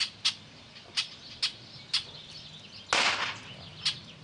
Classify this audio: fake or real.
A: real